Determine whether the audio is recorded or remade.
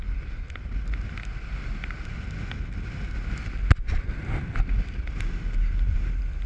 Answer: recorded